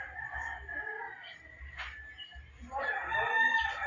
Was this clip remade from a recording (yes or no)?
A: no